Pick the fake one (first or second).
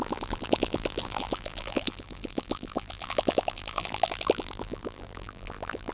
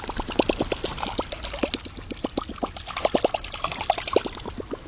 first